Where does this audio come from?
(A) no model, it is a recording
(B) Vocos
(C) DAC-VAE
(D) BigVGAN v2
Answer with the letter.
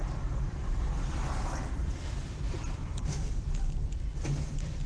D